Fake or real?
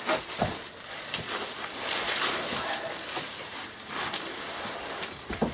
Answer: real